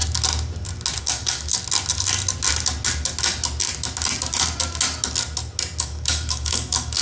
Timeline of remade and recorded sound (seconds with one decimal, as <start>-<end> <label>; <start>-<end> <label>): 0.0-1.0 recorded; 1.0-1.6 remade; 1.6-5.8 recorded; 5.8-7.0 remade